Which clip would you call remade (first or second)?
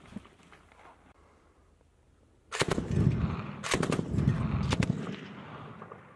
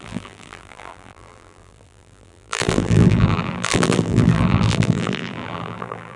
second